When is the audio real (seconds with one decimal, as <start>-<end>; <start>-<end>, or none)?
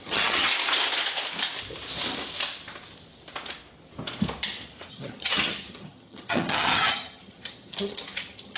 0.5-4.9